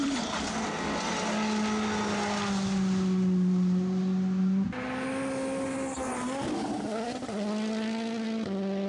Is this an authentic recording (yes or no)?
yes